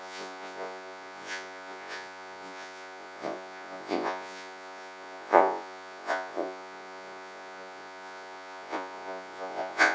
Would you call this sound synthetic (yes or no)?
yes